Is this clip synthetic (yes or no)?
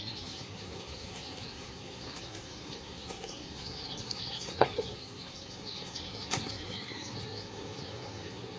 yes